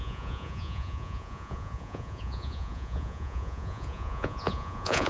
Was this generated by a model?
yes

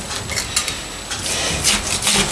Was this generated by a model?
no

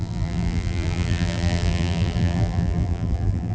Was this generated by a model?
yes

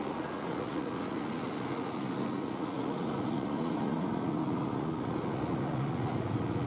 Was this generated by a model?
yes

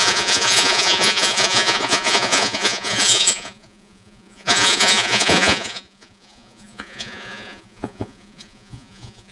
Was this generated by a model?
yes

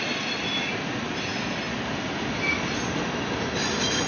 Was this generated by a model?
no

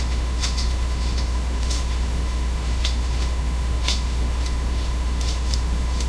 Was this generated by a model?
yes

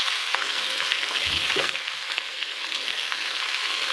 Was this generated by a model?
yes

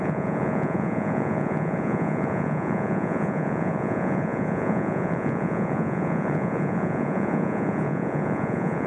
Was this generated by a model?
yes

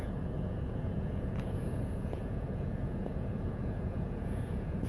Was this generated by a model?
yes